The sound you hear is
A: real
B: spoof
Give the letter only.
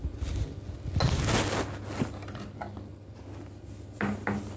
A